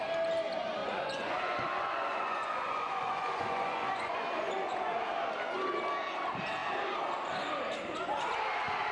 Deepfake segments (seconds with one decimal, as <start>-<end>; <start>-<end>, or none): 0.8-5.0